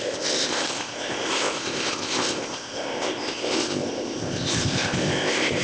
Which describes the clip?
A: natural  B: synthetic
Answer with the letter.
B